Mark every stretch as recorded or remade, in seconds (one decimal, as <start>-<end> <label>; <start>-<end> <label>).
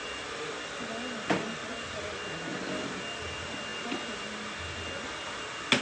0.0-5.8 recorded